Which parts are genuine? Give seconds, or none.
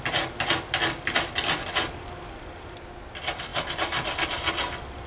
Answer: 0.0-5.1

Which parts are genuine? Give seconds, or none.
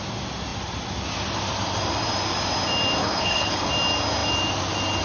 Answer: 0.0-3.0; 3.7-5.0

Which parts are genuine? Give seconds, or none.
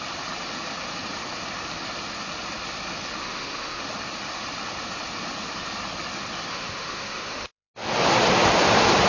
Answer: 0.0-3.2; 3.8-6.5; 7.7-9.1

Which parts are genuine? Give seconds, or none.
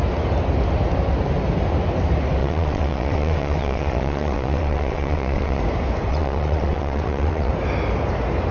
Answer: 0.0-2.4; 5.6-6.1; 7.5-8.5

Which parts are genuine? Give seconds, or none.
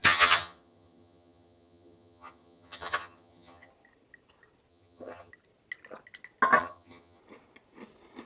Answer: 3.7-4.7; 5.3-6.6; 7.2-8.3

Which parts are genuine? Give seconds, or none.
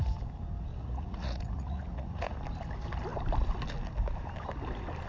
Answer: 0.0-0.7; 2.4-5.1